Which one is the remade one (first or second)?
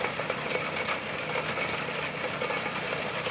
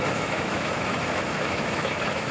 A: second